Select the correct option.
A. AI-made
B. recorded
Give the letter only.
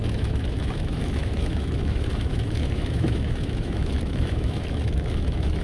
A